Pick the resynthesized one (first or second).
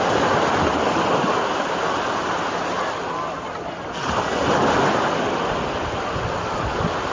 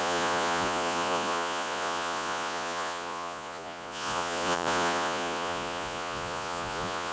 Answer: second